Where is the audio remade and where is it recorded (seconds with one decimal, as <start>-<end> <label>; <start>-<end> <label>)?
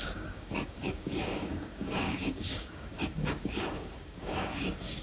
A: 0.0-5.0 remade